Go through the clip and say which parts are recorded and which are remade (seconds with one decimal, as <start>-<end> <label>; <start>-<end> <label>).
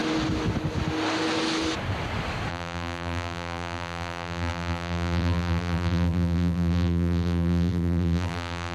0.0-2.5 recorded; 2.5-8.7 remade